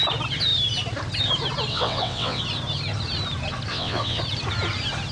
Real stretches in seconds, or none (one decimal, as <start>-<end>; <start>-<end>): 0.0-1.7; 2.4-3.7; 4.2-5.1